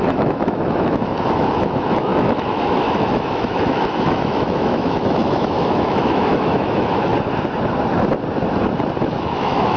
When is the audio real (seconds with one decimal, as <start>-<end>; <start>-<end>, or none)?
7.1-9.0

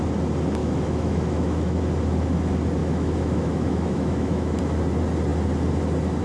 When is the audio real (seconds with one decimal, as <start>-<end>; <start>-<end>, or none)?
0.0-0.6; 1.8-2.8; 4.6-6.2

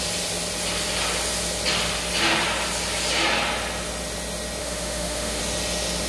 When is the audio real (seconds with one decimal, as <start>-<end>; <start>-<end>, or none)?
0.0-4.6; 5.4-6.1

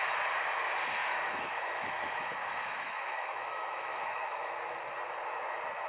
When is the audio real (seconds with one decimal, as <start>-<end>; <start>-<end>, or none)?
0.0-1.0; 4.5-5.9

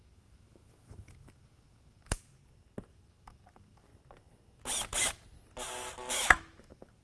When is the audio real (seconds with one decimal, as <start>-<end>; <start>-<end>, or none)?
2.3-2.9; 3.9-6.1